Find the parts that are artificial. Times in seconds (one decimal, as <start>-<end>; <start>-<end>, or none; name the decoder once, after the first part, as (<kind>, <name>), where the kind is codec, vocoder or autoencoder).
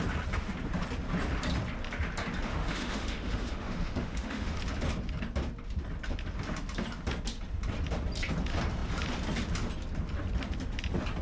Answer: 2.5-4.6 (autoencoder, DAC-VAE)